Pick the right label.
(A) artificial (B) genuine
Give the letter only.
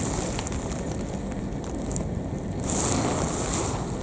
B